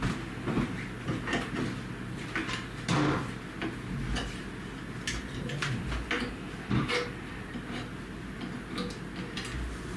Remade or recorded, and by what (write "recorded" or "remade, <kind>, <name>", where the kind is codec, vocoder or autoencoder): recorded